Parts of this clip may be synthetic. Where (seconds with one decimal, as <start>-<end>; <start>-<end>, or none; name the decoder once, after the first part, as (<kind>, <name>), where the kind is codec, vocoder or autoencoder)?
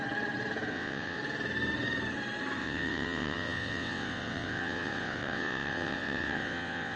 0.7-1.2 (vocoder, WaveNeXt); 2.6-7.0